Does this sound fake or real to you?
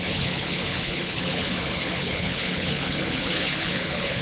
fake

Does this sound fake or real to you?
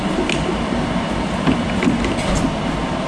real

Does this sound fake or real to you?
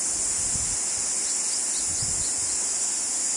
real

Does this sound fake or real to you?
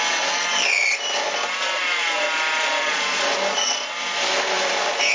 real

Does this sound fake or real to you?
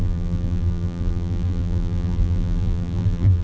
fake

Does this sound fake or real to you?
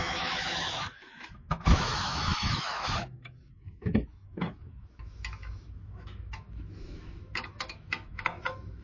fake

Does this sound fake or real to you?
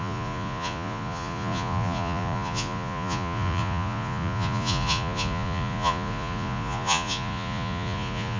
fake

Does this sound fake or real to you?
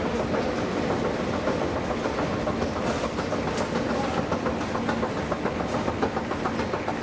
real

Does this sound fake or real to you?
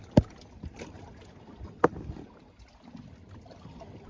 real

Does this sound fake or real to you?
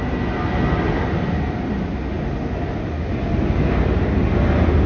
real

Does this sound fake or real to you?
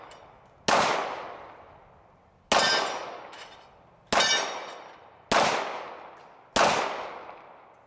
real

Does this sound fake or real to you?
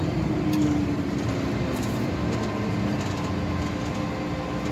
real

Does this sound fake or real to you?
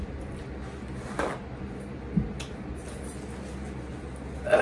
real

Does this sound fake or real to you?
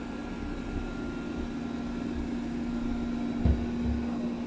real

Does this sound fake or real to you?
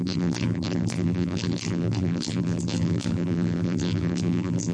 fake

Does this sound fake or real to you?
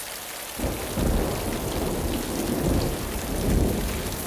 real